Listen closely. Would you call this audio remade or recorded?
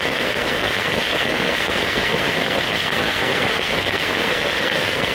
remade